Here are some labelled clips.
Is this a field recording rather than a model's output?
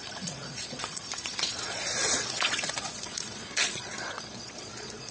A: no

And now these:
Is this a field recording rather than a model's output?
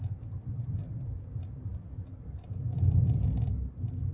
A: yes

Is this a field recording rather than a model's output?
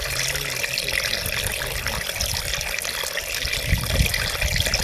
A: yes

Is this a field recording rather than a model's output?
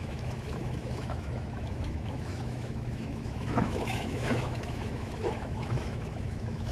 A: no